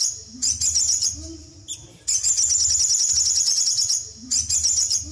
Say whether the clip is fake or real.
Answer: real